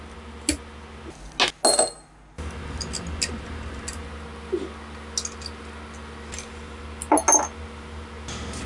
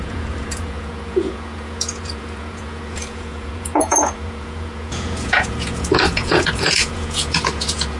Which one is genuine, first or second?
first